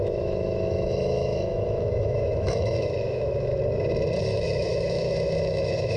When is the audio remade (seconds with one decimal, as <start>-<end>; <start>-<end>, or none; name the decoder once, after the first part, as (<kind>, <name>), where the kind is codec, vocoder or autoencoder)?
0.0-3.5 (autoencoder, DAC-VAE); 4.2-6.0